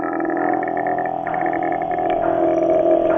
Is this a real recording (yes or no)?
yes